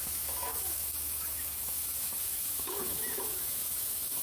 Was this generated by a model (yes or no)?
yes